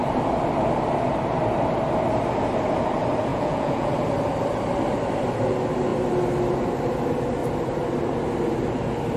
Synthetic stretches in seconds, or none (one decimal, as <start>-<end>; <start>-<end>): 3.3-3.9